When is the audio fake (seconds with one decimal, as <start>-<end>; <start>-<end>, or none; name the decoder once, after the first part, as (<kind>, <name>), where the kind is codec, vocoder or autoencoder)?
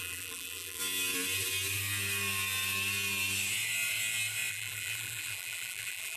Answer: 0.0-0.8 (vocoder, BigVGAN v2); 4.5-6.2